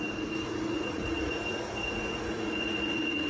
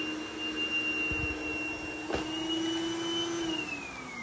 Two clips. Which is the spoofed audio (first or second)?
first